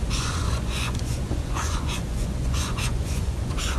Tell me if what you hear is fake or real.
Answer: fake